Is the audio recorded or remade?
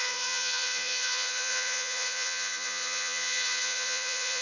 remade